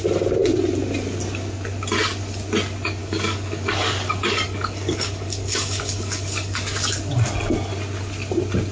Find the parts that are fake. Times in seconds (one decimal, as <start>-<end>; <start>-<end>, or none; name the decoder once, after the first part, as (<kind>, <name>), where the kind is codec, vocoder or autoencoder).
3.0-6.9 (codec, DAC)